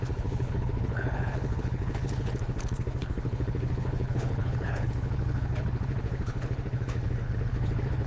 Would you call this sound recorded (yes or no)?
no